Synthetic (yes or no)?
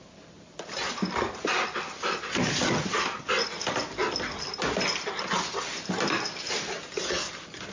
no